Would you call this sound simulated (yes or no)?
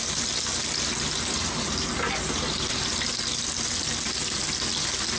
no